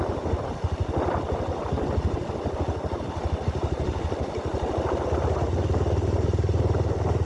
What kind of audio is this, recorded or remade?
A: recorded